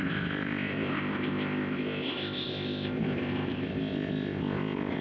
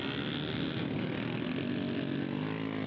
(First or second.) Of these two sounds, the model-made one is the first